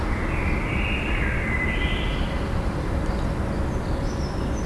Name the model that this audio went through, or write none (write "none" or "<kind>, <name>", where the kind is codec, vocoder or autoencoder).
none